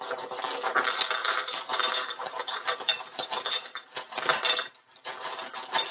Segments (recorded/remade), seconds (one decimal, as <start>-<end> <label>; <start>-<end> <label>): 0.0-1.2 recorded; 1.2-4.7 remade; 4.7-5.9 recorded